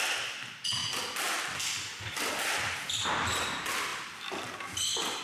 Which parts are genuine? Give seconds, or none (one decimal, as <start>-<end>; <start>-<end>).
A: 0.0-5.2